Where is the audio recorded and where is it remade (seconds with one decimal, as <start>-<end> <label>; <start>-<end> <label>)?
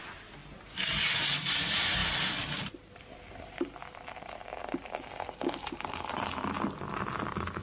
0.0-2.0 recorded; 2.0-6.2 remade; 6.2-7.6 recorded